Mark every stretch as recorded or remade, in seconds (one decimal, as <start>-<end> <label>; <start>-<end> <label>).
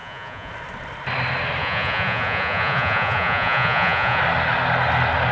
0.0-0.5 remade; 0.5-1.6 recorded; 1.6-4.2 remade; 4.2-5.3 recorded